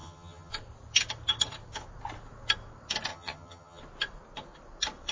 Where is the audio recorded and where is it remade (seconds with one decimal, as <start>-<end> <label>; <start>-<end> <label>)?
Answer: 0.0-0.5 remade; 0.5-3.1 recorded; 3.1-3.8 remade; 3.8-5.1 recorded